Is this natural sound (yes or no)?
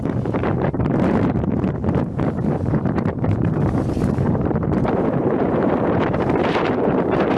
no